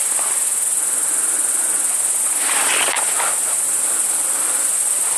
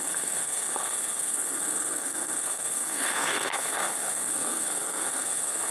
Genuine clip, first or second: first